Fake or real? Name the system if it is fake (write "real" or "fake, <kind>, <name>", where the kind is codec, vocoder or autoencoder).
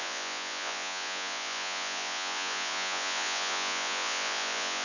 fake, vocoder, Vocos